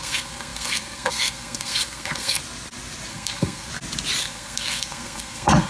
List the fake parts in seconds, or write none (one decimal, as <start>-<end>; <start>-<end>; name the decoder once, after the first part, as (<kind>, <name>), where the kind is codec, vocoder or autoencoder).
0.0-2.4 (codec, SNAC); 3.1-3.7; 4.2-5.7